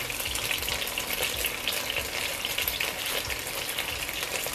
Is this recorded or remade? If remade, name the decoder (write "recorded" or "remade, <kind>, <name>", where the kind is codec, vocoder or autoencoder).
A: recorded